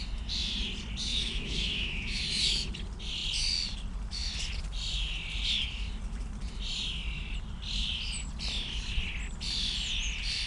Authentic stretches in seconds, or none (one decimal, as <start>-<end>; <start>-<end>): 0.0-1.1; 2.2-10.5

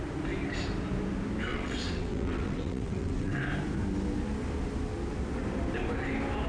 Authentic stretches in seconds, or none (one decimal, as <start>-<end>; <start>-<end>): 0.0-1.5; 3.4-6.5

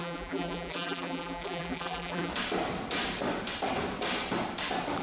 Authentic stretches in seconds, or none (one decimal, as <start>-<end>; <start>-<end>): 2.3-5.0

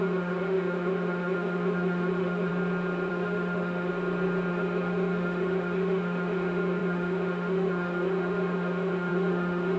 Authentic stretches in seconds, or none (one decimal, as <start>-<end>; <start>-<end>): 2.5-3.1; 3.9-4.5